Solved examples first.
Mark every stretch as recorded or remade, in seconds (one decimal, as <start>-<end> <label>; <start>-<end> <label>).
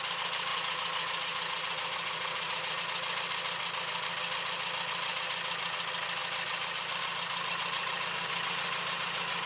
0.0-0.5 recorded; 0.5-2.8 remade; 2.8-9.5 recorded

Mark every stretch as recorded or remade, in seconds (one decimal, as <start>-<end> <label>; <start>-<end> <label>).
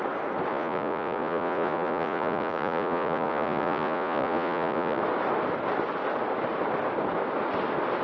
0.0-0.5 recorded; 0.5-5.0 remade; 5.0-8.0 recorded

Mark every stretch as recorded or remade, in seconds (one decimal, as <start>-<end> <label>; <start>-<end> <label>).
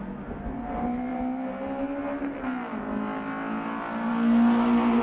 0.0-5.0 recorded